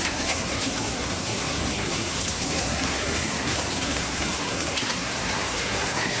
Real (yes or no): no